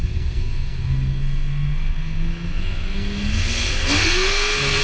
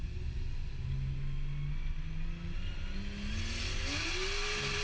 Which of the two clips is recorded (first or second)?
second